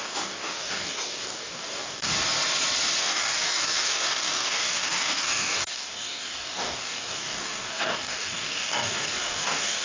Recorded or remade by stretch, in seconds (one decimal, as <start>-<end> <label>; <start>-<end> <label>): 0.0-2.1 remade; 2.1-3.0 recorded; 3.0-9.8 remade